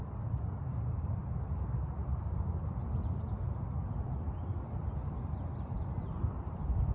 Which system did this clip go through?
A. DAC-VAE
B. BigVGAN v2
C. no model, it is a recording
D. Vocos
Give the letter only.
C